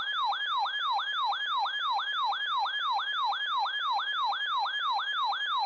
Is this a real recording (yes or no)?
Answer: yes